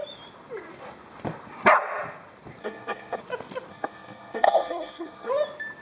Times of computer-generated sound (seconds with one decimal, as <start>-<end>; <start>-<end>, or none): 2.6-3.2; 3.7-5.3